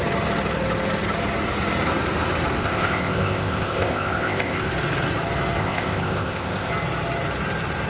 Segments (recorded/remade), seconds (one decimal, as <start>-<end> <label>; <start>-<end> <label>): 0.0-2.6 recorded; 2.6-4.7 remade; 4.7-5.6 recorded; 5.6-6.7 remade; 6.7-7.9 recorded